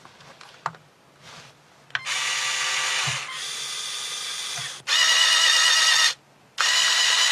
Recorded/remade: recorded